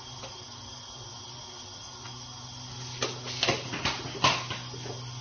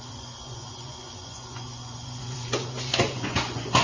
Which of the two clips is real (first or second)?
first